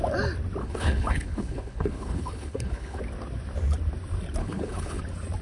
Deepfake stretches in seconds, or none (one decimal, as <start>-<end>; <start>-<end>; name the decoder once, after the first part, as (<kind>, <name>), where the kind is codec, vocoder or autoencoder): 0.6-3.0 (codec, HILCodec); 4.4-5.0